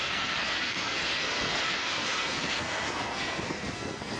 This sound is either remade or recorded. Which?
remade